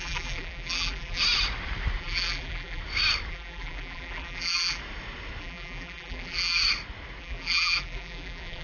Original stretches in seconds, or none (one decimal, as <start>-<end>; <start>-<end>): 1.2-2.0; 2.8-3.3; 4.8-5.4; 6.6-7.2